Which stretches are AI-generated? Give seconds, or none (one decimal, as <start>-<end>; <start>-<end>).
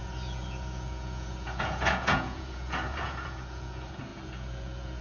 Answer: 0.0-5.0